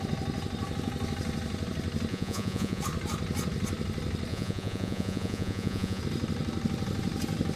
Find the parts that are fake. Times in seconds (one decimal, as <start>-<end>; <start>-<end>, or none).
2.1-2.8; 4.3-6.0